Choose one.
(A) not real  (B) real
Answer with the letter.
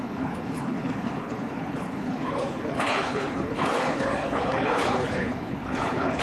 A